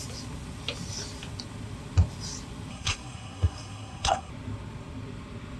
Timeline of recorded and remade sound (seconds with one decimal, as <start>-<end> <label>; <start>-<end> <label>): 0.0-2.7 recorded; 2.7-4.3 remade; 4.3-5.6 recorded